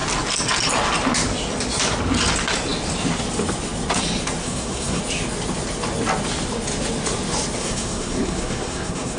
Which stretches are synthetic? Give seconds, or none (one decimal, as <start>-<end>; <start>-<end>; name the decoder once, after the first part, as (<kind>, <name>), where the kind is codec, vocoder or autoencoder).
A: 4.4-5.0 (codec, SNAC); 7.6-9.2